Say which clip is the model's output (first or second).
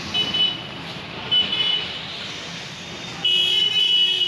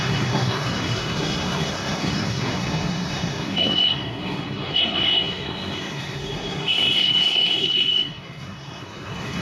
second